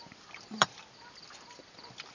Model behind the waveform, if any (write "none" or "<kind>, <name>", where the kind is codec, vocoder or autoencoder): vocoder, BigVGAN v2